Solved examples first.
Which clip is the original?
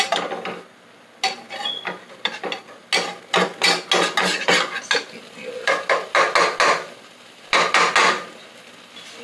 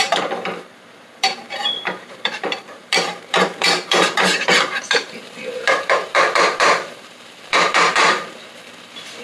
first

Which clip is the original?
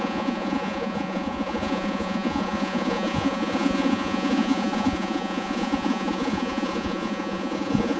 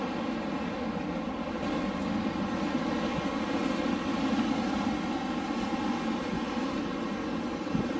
second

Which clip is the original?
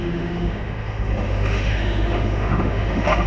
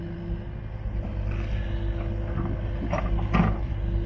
second